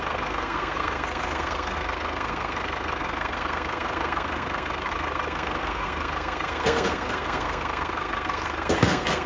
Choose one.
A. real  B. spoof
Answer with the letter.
B